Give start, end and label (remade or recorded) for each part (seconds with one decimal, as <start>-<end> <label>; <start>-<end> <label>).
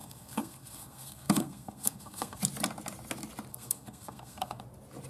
0.0-2.4 remade; 2.4-3.5 recorded; 3.5-4.6 remade; 4.6-5.1 recorded